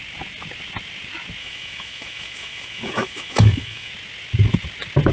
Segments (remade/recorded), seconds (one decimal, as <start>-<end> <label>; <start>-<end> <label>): 0.0-1.4 recorded; 1.4-3.9 remade; 3.9-5.1 recorded